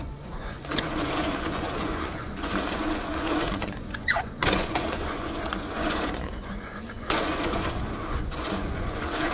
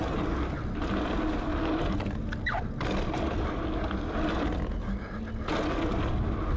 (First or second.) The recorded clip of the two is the second